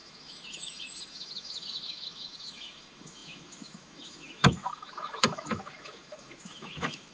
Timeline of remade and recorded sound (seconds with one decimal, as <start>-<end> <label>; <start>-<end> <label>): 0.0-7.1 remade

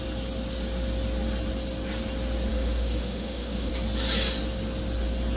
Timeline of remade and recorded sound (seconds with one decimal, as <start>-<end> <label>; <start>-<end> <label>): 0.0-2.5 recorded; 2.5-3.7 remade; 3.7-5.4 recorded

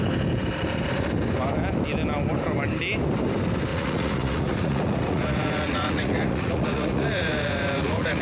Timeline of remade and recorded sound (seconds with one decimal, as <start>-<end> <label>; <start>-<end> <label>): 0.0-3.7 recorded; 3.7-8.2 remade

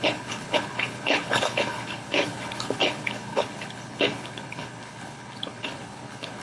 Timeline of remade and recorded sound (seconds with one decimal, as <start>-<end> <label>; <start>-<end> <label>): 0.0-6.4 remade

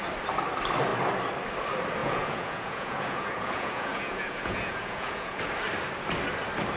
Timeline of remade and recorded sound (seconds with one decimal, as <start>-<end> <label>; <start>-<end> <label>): 0.0-2.0 recorded; 2.0-5.4 remade; 5.4-6.8 recorded

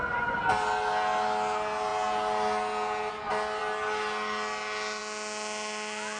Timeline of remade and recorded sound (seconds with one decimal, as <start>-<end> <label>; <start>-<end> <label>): 0.0-6.2 recorded